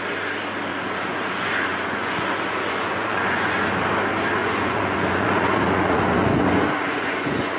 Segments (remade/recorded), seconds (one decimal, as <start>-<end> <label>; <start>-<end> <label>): 0.0-0.7 recorded; 0.7-3.6 remade; 3.6-4.4 recorded; 4.4-7.6 remade